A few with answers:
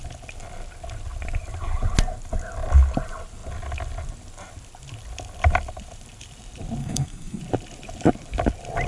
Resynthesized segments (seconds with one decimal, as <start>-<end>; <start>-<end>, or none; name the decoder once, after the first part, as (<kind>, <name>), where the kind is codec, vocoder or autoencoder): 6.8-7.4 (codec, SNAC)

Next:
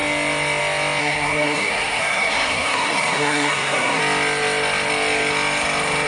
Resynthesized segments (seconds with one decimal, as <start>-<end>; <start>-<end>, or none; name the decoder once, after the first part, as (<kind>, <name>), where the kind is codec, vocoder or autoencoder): 1.0-4.0 (codec, SNAC)

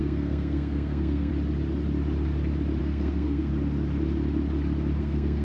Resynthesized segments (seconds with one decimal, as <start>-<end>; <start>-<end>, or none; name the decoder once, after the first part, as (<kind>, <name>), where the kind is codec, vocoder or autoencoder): 0.0-1.3 (codec, SNAC); 2.8-3.5; 5.0-5.4

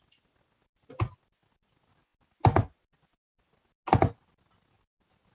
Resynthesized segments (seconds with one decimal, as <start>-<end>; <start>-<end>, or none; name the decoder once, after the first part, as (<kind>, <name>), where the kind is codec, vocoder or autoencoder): none

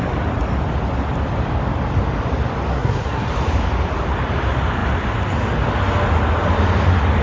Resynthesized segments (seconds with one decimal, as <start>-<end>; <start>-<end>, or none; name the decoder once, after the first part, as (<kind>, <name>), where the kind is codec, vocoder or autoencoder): 2.7-3.3 (codec, SNAC)

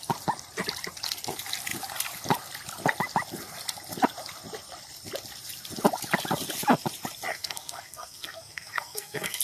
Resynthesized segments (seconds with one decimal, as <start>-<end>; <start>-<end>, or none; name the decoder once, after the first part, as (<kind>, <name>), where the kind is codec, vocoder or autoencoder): 7.3-9.4 (codec, SNAC)

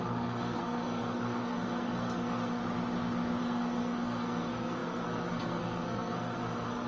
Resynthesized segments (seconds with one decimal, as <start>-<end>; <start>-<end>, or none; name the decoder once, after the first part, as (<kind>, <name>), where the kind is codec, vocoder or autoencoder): 0.0-2.6 (codec, SNAC); 3.4-6.9